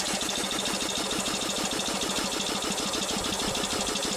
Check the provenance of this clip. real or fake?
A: real